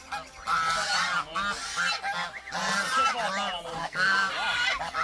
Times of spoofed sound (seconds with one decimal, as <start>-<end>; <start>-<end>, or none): 3.7-4.3